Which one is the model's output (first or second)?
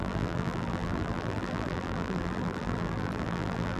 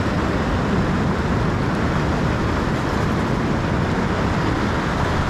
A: first